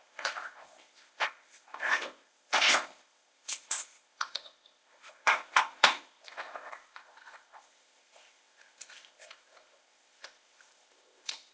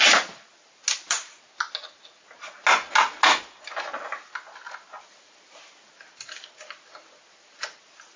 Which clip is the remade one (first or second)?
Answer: first